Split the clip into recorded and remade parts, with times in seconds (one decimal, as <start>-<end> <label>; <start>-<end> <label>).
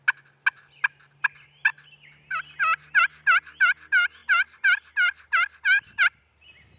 0.0-6.8 recorded